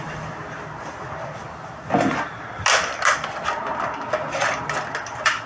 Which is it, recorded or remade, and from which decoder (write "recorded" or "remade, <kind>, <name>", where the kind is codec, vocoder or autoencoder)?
recorded